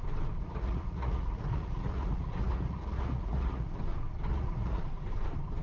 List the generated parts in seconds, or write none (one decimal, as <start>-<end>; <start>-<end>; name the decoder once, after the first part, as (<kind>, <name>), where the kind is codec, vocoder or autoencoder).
0.4-3.8 (vocoder, Vocos); 4.3-4.8